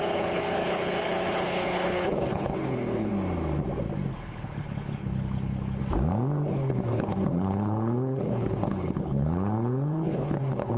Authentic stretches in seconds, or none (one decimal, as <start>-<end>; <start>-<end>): 3.1-4.1; 5.8-6.5